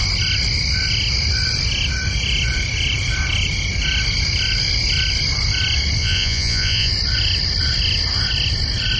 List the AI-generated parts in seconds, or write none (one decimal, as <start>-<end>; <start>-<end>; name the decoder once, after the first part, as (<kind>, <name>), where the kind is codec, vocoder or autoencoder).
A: 6.0-6.9 (vocoder, Vocos)